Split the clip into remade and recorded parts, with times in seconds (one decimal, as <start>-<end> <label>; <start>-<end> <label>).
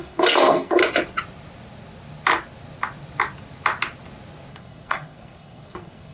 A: 0.0-0.8 remade; 0.8-4.5 recorded; 4.5-6.1 remade